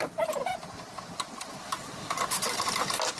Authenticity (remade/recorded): recorded